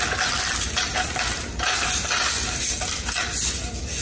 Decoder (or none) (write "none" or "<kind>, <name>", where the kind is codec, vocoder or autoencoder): none